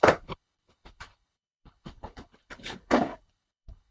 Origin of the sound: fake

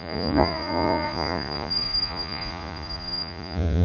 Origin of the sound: fake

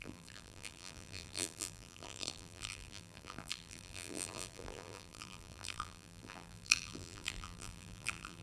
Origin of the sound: fake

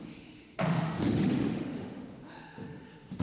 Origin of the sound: fake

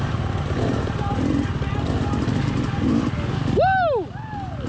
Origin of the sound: real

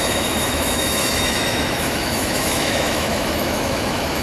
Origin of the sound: fake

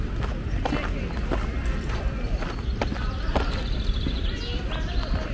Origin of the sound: real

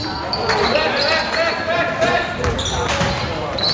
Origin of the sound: real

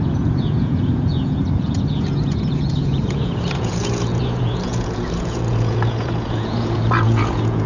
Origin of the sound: fake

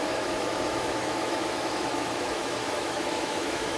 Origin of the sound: fake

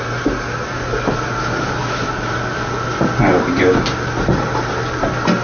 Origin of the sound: real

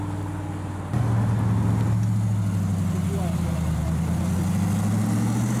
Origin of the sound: real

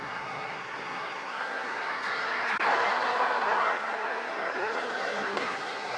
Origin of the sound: fake